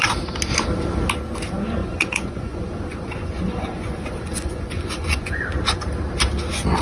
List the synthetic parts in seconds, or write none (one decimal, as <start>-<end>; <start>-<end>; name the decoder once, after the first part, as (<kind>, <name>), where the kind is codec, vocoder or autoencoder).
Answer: 1.8-5.4 (vocoder, Vocos)